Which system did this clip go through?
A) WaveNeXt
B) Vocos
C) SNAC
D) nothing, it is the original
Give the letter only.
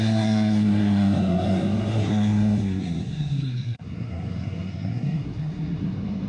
C